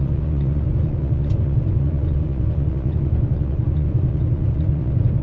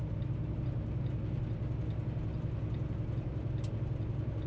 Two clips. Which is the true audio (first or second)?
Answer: second